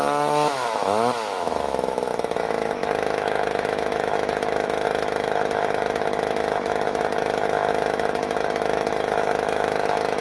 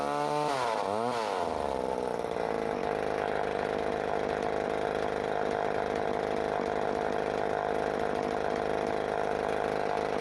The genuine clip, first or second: second